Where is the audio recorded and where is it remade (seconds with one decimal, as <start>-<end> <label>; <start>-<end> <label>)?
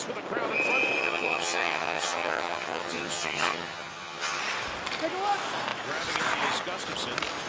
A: 0.0-1.0 recorded; 1.0-4.4 remade; 4.4-7.5 recorded